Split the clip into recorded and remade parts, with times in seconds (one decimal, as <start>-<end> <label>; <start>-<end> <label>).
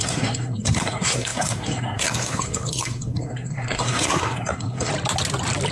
0.0-4.9 remade; 4.9-5.7 recorded